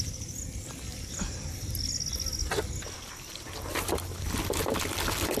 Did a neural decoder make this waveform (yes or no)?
no